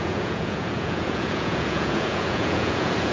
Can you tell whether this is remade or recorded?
remade